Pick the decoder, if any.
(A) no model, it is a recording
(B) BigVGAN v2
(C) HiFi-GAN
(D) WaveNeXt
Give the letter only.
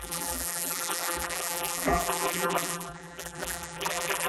B